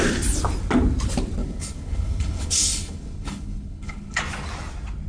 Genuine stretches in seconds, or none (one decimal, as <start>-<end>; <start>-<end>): 0.0-1.4; 4.2-5.1